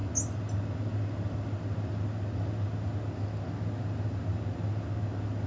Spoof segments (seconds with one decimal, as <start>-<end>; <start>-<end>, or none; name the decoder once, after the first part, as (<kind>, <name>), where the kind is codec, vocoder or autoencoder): none